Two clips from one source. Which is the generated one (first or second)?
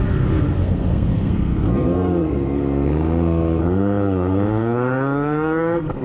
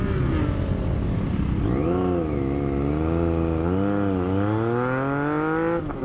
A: first